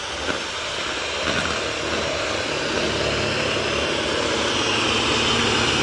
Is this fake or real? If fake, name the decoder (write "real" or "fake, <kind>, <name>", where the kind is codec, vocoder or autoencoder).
real